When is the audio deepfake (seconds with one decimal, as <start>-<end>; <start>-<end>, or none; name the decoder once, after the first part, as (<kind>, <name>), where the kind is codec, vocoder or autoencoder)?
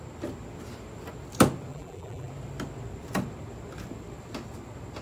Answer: 1.7-2.3 (vocoder, BigVGAN v2)